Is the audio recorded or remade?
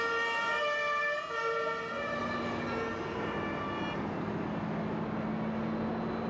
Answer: recorded